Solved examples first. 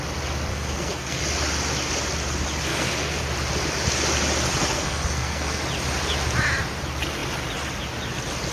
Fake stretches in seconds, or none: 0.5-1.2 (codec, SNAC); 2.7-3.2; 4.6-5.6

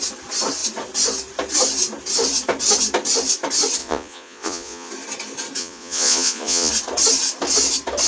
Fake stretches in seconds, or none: 3.8-4.9 (vocoder, Vocos); 5.6-6.7

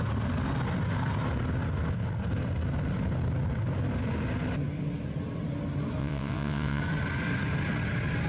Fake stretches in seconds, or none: 6.0-6.8 (vocoder, WaveNeXt)

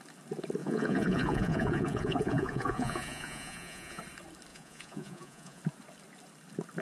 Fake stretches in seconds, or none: 0.6-4.0 (vocoder, Vocos); 4.5-5.6

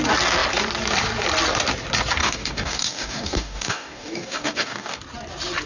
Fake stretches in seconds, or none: 2.2-5.0 (codec, DAC)

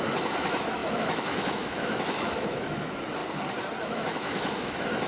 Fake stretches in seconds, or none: 0.0-3.2 (autoencoder, DAC-VAE); 3.8-5.1